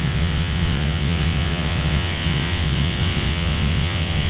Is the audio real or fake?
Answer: fake